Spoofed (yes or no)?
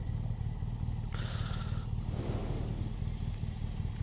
no